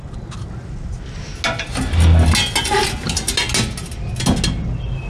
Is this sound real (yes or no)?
yes